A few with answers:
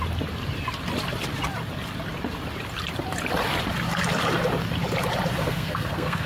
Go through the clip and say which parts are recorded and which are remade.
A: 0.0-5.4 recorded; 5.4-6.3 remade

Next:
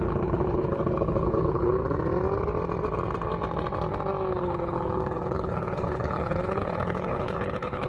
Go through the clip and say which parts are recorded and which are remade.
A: 0.0-1.8 remade; 1.8-4.3 recorded; 4.3-7.9 remade

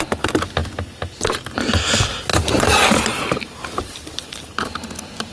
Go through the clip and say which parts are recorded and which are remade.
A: 0.0-2.3 recorded; 2.3-4.5 remade; 4.5-5.3 recorded

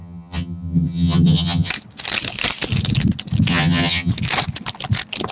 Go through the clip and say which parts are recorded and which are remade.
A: 0.0-1.7 remade; 1.7-3.5 recorded; 3.5-4.1 remade; 4.1-5.3 recorded